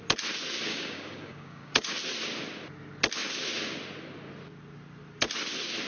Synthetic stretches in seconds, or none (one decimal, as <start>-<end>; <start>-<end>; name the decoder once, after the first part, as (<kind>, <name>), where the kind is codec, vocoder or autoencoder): 0.7-1.9 (codec, DAC)